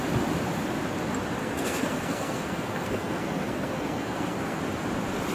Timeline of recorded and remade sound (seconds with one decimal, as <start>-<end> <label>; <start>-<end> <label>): 0.0-1.4 recorded; 1.4-4.6 remade; 4.6-5.3 recorded